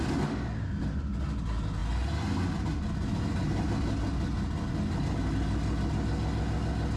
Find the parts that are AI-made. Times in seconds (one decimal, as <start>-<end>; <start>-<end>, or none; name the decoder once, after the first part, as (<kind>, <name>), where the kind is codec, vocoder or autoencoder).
none